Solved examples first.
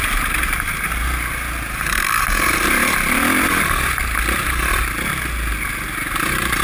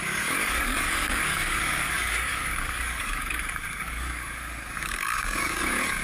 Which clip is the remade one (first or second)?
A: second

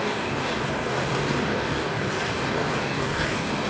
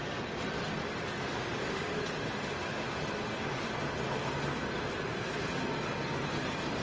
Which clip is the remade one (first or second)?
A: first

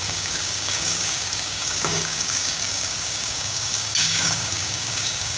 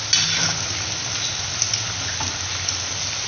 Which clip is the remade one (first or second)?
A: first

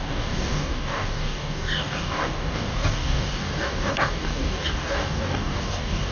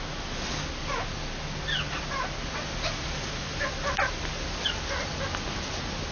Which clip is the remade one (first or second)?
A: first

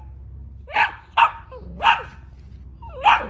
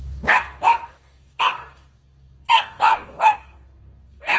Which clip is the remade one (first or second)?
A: second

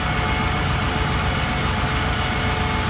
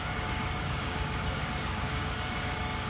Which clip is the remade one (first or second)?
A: second